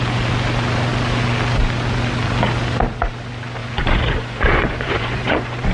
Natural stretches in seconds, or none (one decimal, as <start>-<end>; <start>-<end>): 0.0-3.6